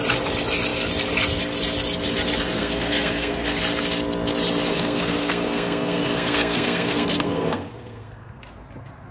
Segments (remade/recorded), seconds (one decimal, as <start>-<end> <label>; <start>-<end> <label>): 0.0-2.6 recorded; 2.6-3.6 remade; 3.6-4.7 recorded; 4.7-8.4 remade; 8.4-9.1 recorded